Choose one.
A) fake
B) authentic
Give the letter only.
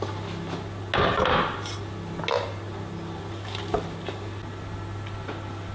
B